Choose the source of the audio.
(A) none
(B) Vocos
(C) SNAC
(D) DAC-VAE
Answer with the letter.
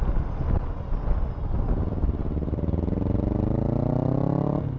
A